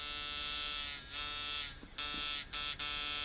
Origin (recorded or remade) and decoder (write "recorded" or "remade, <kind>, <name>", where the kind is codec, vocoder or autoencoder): recorded